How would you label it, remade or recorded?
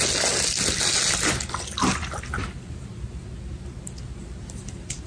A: recorded